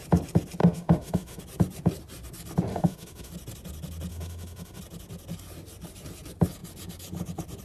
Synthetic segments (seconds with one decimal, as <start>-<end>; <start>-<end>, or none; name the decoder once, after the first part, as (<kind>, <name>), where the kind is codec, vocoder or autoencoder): 0.6-1.4 (autoencoder, DAC-VAE); 2.7-3.3; 4.1-4.8